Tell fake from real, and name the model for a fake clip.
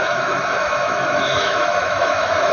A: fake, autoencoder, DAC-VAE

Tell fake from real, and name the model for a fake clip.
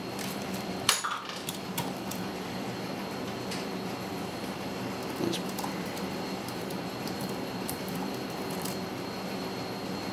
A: fake, vocoder, BigVGAN v2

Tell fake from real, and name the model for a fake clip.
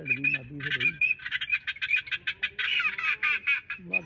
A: real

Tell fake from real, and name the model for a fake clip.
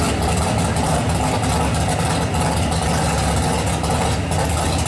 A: real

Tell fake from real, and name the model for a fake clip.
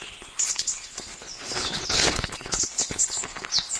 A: fake, codec, HILCodec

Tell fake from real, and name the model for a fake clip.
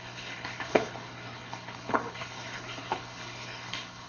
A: fake, codec, HILCodec